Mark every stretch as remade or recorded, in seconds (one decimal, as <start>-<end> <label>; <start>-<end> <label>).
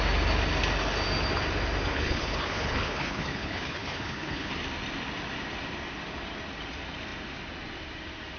0.0-1.9 recorded; 1.9-4.5 remade; 4.5-8.4 recorded